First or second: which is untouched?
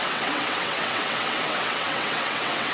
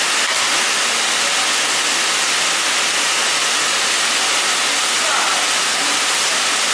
second